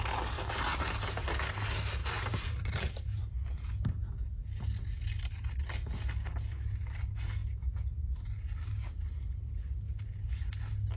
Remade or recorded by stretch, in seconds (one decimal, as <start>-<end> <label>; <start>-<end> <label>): 0.0-2.0 recorded; 2.0-3.2 remade; 3.2-11.0 recorded